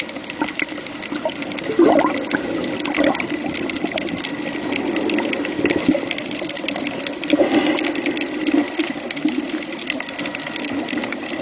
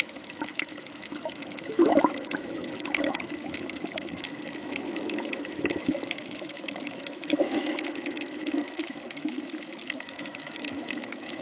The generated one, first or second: second